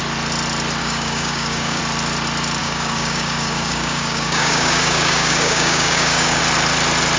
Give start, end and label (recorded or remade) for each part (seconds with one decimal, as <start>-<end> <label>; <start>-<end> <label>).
0.0-0.8 recorded; 0.8-1.8 remade; 1.8-2.6 recorded; 2.6-6.4 remade; 6.4-7.2 recorded